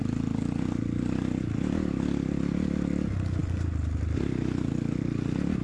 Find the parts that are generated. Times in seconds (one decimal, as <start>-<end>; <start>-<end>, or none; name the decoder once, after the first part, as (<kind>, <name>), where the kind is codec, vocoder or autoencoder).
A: none